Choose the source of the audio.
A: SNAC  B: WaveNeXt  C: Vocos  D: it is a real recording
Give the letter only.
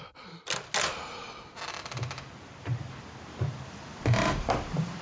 D